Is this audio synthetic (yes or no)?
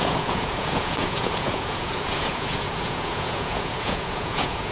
yes